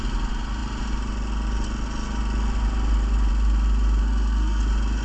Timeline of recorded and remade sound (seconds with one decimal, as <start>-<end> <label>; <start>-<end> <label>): 0.0-4.0 recorded; 4.0-4.6 remade; 4.6-5.0 recorded